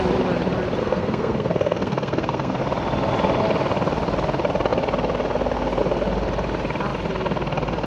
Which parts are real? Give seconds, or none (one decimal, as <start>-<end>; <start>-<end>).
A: 0.0-0.8; 2.6-7.9